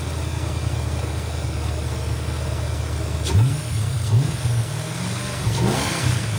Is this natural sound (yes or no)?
no